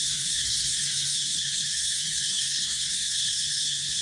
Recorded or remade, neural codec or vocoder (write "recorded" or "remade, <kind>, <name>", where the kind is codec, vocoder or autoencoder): remade, codec, SNAC